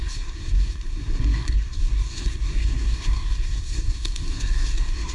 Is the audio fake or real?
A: fake